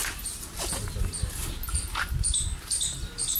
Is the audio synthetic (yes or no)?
no